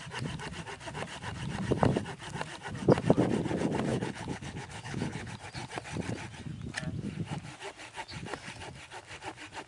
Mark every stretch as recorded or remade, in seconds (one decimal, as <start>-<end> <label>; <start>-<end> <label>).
0.0-3.9 recorded; 3.9-5.3 remade; 5.3-9.7 recorded